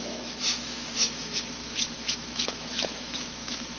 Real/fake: fake